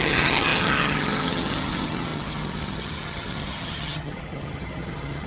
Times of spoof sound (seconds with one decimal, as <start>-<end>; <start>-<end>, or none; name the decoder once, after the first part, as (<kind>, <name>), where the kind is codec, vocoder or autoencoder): 0.0-5.3 (vocoder, HiFi-GAN)